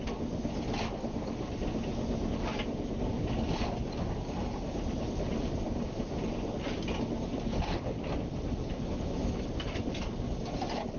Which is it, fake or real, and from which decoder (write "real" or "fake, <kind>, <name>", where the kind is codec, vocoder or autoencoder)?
real